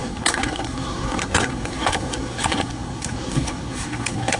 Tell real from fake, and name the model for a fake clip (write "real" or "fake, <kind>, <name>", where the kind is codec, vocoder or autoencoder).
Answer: fake, codec, SNAC